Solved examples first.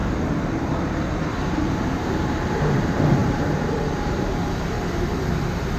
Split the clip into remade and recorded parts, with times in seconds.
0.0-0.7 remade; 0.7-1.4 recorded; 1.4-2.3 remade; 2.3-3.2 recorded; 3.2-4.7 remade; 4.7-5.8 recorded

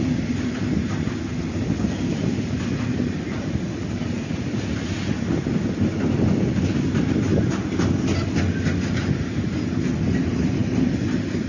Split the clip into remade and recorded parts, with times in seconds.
0.0-11.5 recorded